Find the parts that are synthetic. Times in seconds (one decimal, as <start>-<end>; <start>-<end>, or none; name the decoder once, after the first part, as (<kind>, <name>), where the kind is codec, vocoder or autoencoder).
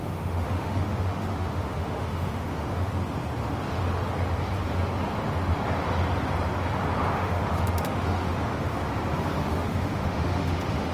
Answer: 0.0-2.9 (autoencoder, DAC-VAE); 7.1-8.8; 9.4-10.9